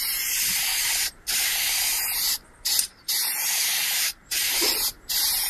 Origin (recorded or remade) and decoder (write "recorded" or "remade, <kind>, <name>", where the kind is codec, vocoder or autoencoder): remade, vocoder, BigVGAN v2